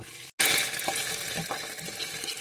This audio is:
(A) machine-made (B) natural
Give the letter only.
B